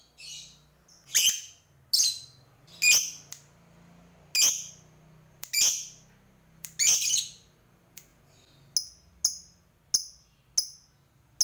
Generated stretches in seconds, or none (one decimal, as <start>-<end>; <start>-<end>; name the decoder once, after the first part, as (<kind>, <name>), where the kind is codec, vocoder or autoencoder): none